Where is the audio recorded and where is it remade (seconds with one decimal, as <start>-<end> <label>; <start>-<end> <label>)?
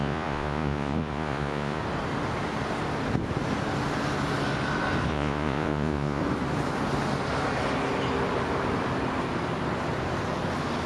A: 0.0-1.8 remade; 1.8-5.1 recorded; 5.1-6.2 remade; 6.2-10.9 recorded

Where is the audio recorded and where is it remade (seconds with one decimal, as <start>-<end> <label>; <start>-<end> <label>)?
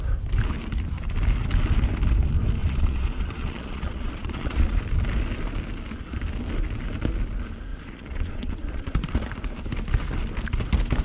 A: 0.0-2.6 recorded; 2.6-4.8 remade; 4.8-7.7 recorded; 7.7-9.1 remade; 9.1-11.0 recorded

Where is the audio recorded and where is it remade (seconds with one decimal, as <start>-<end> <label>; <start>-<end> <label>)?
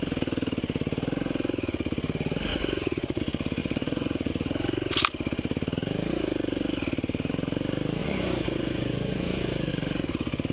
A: 0.0-2.5 recorded; 2.5-3.2 remade; 3.2-3.6 recorded; 3.6-4.3 remade; 4.3-8.0 recorded; 8.0-9.7 remade; 9.7-10.5 recorded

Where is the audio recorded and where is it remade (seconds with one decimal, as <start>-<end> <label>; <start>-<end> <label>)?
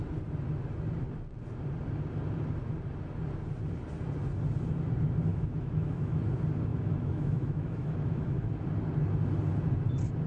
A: 0.0-5.3 recorded; 5.3-6.2 remade; 6.2-6.7 recorded; 6.7-8.5 remade; 8.5-10.3 recorded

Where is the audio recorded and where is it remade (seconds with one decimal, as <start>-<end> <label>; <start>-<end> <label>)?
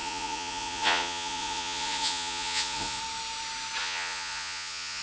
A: 0.0-3.0 remade; 3.0-3.8 recorded; 3.8-5.0 remade